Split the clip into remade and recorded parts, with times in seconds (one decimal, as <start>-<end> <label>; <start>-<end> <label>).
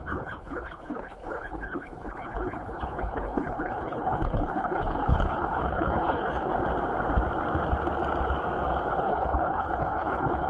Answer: 0.0-6.5 remade; 6.5-9.0 recorded; 9.0-10.5 remade